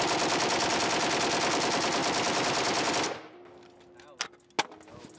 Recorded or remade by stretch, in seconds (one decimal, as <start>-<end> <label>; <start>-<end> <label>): 0.0-5.2 recorded